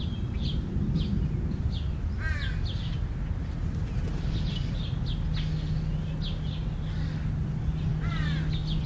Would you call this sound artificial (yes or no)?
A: no